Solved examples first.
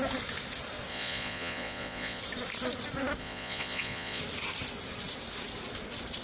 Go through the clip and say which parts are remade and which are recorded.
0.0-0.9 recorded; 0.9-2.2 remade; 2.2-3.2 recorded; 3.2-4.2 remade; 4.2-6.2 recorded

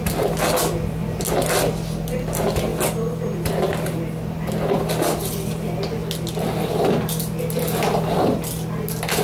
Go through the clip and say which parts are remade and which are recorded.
0.0-9.2 recorded

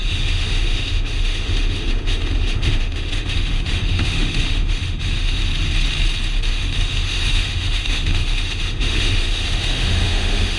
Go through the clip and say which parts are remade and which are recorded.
0.0-5.4 remade; 5.4-6.5 recorded; 6.5-10.6 remade